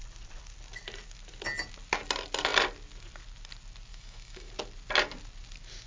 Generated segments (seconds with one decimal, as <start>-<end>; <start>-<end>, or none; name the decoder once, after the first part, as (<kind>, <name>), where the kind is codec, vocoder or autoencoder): 3.9-4.5 (autoencoder, DAC-VAE)